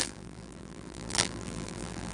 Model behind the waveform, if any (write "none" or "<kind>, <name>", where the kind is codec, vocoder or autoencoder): vocoder, BigVGAN v2